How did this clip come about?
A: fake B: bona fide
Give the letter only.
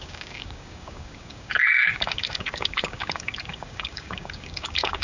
A